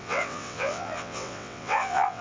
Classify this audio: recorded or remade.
remade